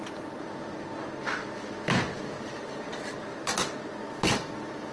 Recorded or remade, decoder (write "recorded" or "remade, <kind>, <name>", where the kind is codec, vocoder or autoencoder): recorded